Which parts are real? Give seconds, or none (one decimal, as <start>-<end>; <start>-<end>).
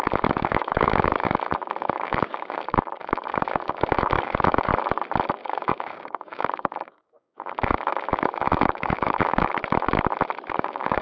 4.7-5.3; 9.5-10.5